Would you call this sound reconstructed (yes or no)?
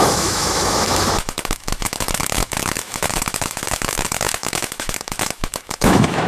yes